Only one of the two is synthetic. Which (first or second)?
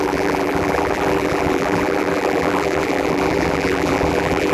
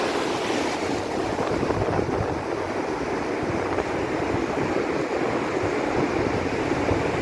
first